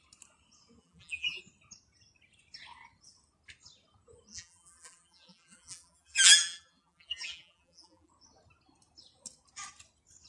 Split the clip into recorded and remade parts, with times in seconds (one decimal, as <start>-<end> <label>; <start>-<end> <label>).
0.0-0.8 recorded; 0.8-1.4 remade; 1.4-4.3 recorded; 4.3-8.1 remade; 8.1-10.3 recorded